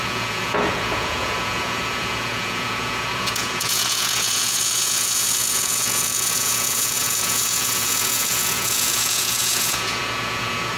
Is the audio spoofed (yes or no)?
yes